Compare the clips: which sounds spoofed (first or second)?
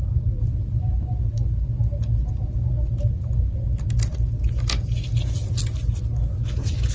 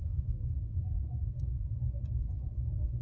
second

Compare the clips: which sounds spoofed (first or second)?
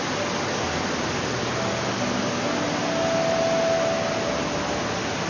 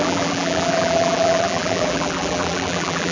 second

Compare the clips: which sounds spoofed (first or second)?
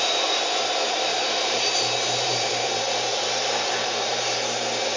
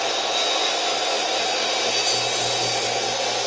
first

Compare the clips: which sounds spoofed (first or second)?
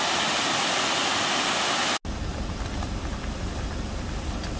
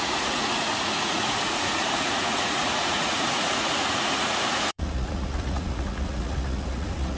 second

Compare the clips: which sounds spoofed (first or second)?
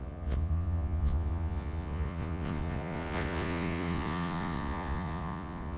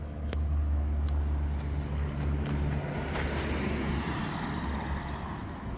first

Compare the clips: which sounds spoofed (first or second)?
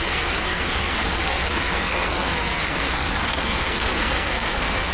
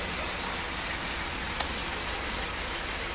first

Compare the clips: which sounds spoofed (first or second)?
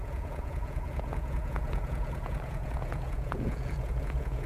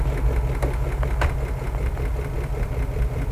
first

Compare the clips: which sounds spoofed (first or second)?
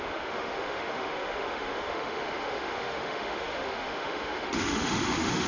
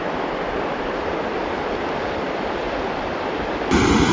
first